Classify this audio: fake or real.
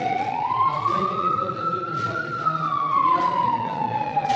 fake